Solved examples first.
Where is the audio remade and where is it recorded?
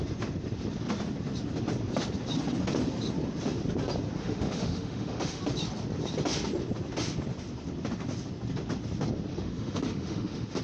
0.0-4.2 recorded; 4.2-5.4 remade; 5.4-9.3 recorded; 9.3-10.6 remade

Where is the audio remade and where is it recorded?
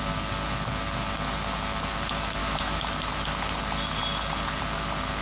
0.0-2.4 recorded; 2.4-2.9 remade; 2.9-5.2 recorded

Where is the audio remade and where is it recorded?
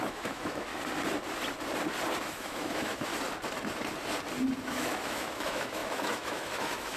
0.0-0.7 remade; 0.7-2.2 recorded; 2.2-3.1 remade; 3.1-4.6 recorded; 4.6-7.0 remade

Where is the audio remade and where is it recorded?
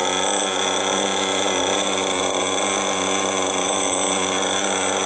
0.0-3.6 recorded; 3.6-4.1 remade; 4.1-5.1 recorded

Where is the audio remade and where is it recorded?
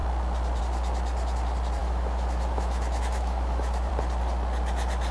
0.0-1.8 recorded; 1.8-3.9 remade; 3.9-5.1 recorded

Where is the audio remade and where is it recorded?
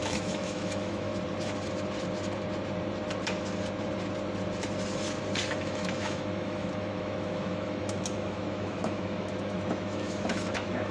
0.0-1.1 remade; 1.1-5.6 recorded; 5.6-10.9 remade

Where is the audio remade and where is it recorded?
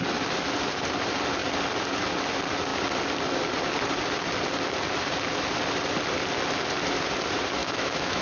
0.0-7.6 recorded; 7.6-8.2 remade